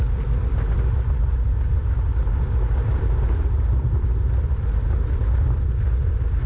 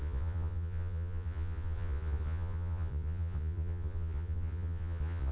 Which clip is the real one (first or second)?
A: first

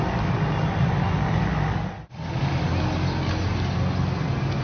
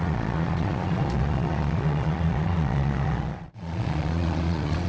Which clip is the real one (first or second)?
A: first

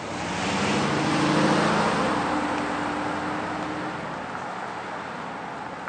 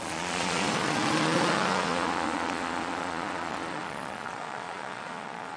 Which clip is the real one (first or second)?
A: first